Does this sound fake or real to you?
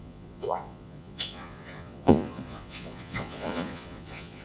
fake